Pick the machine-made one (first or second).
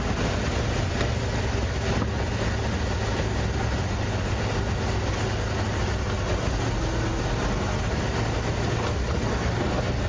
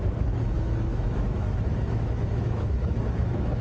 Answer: second